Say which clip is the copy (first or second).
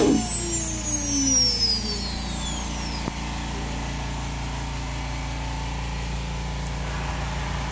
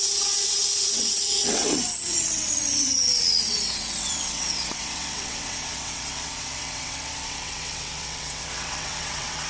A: second